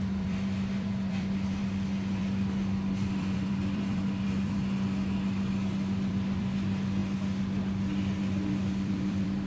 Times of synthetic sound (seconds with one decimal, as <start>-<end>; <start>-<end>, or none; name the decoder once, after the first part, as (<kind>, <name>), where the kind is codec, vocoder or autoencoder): 0.0-1.6 (vocoder, BigVGAN v2); 2.2-4.6; 6.1-7.0; 8.0-9.5